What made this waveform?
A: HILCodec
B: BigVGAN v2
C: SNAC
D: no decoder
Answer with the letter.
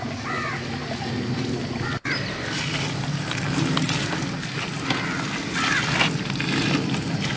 D